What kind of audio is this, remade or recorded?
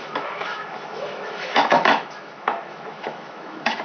remade